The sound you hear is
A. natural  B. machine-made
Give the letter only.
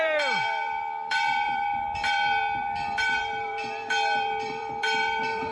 B